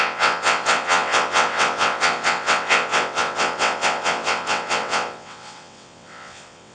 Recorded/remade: remade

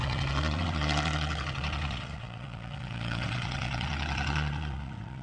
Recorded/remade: remade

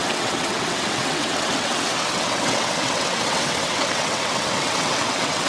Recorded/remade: remade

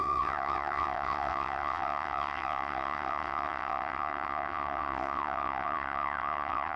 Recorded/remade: remade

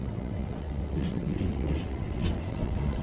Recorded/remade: remade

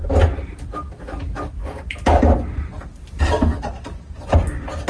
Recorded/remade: recorded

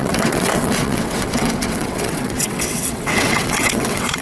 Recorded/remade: remade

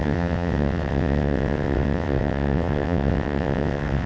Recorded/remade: remade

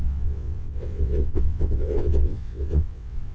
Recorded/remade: remade